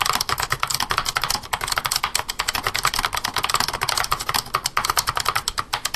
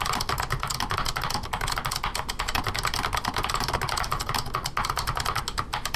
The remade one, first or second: first